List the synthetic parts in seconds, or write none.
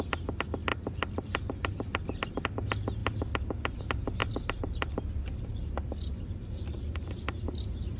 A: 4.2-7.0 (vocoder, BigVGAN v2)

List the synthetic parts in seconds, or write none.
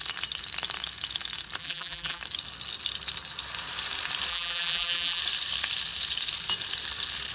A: 1.6-2.2 (vocoder, BigVGAN v2); 4.3-5.2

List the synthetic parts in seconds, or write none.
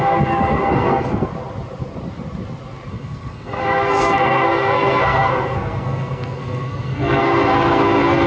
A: 0.0-1.3 (codec, SNAC); 2.9-8.3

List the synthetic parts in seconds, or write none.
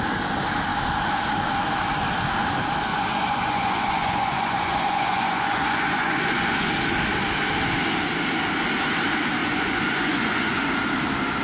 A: 2.9-6.7 (vocoder, Vocos); 9.4-10.7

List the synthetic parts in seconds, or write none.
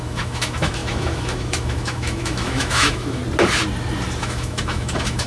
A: 0.0-3.2 (autoencoder, DAC-VAE); 4.2-5.3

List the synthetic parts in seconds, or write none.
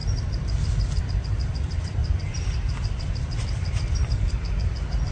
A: 1.0-5.1 (vocoder, BigVGAN v2)